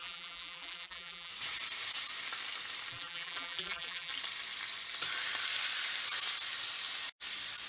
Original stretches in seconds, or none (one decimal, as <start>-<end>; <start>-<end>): 1.3-2.9; 4.1-7.7